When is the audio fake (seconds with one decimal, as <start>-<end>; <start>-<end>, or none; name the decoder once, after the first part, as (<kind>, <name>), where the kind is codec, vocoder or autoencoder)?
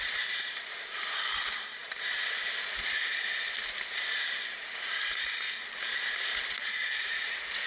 6.6-7.7 (vocoder, Vocos)